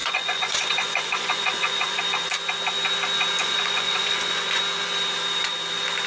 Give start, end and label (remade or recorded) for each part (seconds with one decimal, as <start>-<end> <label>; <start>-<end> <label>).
0.0-2.0 remade; 2.0-3.4 recorded; 3.4-4.6 remade; 4.6-6.1 recorded